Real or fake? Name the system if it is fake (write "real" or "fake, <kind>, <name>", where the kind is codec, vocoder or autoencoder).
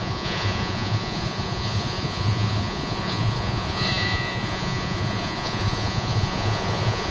fake, vocoder, Vocos